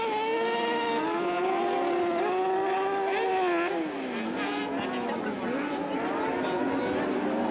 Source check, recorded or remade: recorded